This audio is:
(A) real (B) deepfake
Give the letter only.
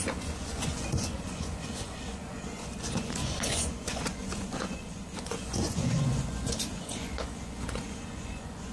B